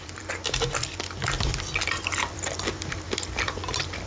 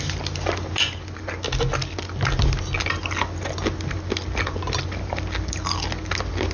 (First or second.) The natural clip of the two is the second